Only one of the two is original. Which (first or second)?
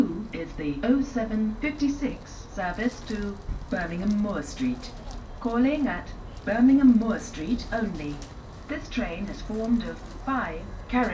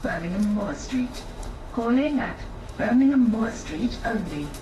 first